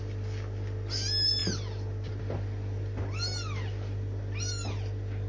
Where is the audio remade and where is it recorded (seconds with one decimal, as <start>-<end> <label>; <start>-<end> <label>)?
0.0-5.3 recorded